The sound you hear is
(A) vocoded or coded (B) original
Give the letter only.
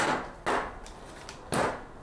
B